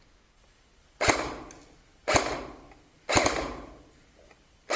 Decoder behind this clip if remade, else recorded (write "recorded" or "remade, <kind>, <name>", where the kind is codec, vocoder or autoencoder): recorded